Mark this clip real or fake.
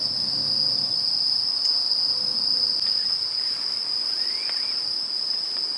real